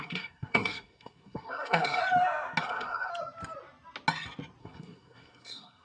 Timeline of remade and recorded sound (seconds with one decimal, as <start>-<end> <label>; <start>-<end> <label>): 0.0-2.0 remade; 2.0-2.6 recorded; 2.6-3.1 remade; 3.1-4.6 recorded; 4.6-5.8 remade